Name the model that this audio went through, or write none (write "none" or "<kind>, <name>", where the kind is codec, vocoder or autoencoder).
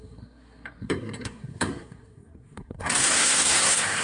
codec, SNAC